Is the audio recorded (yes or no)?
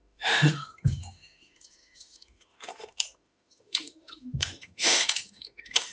no